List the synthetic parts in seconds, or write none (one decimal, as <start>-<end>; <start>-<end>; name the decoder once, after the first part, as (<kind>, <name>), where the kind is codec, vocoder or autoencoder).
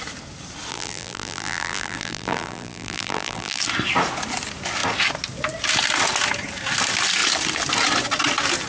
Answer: 0.7-3.6 (vocoder, BigVGAN v2)